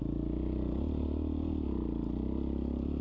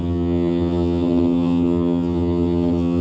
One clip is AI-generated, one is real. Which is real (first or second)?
first